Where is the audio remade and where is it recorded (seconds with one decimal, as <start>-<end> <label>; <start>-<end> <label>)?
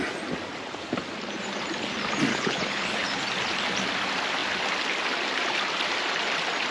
0.0-2.3 recorded; 2.3-3.2 remade; 3.2-6.7 recorded